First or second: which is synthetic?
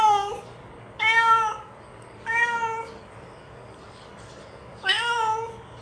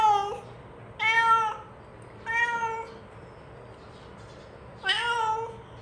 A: first